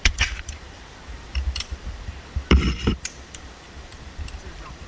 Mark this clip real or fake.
fake